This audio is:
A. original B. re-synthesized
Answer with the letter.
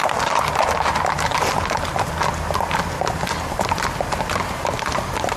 A